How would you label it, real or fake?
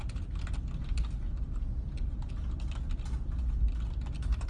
real